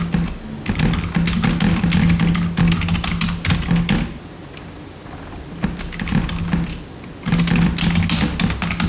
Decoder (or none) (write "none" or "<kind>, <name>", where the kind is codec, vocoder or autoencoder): none